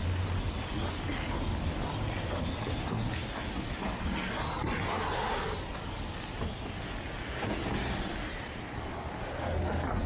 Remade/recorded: recorded